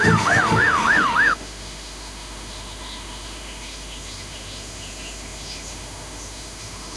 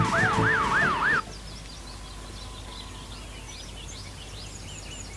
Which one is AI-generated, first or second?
first